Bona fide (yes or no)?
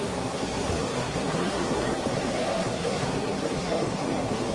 no